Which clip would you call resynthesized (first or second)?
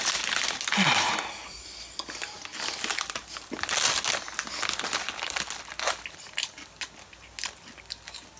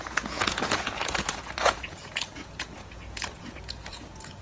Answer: second